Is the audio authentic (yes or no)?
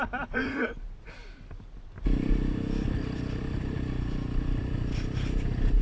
no